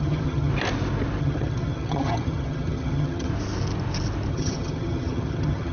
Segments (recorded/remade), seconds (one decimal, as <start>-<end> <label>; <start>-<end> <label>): 0.0-0.5 remade; 0.5-1.2 recorded; 1.2-3.3 remade; 3.3-4.3 recorded; 4.3-5.7 remade

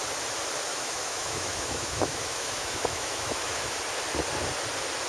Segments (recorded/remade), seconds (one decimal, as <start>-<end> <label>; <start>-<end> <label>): 0.0-0.7 recorded; 0.7-3.8 remade; 3.8-5.1 recorded

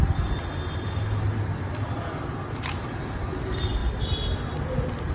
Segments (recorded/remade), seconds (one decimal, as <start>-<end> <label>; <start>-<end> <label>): 0.0-5.1 recorded

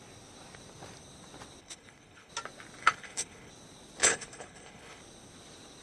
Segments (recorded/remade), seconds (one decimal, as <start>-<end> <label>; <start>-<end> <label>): 0.0-1.6 recorded; 1.6-2.3 remade; 2.3-2.8 recorded; 2.8-3.5 remade; 3.5-4.0 recorded; 4.0-5.0 remade; 5.0-5.8 recorded

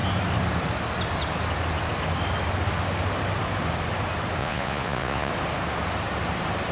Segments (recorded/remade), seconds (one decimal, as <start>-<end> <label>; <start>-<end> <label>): 0.0-4.4 recorded; 4.4-5.3 remade; 5.3-6.7 recorded

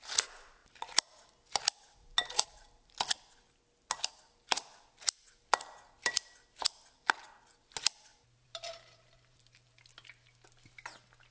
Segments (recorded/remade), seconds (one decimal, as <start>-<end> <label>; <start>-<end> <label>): 0.0-8.1 recorded; 8.1-9.8 remade; 9.8-11.3 recorded

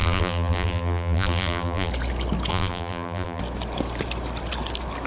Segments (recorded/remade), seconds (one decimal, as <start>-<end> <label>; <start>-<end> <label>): 0.0-1.9 remade; 1.9-2.5 recorded; 2.5-3.4 remade; 3.4-5.1 recorded